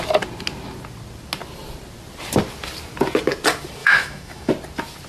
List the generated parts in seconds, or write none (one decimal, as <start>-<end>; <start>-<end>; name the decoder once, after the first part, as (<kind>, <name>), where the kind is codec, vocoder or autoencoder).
3.8-4.5 (autoencoder, DAC-VAE)